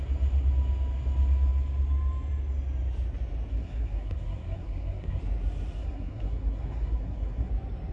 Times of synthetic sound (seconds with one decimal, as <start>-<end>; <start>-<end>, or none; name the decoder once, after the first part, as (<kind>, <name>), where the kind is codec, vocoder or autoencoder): 3.5-5.2 (codec, SNAC); 5.8-7.5